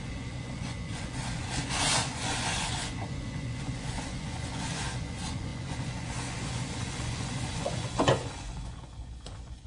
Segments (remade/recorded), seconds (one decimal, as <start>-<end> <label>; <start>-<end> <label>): 0.0-9.7 remade